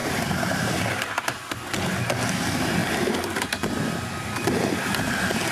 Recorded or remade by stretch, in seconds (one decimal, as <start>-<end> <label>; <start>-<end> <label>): 0.0-0.8 remade; 0.8-5.5 recorded